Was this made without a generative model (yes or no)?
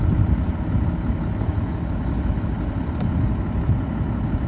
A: yes